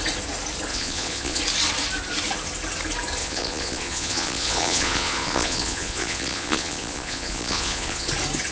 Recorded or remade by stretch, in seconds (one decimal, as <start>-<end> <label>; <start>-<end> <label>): 0.0-0.7 recorded; 0.7-1.4 remade; 1.4-3.2 recorded; 3.2-8.1 remade; 8.1-8.5 recorded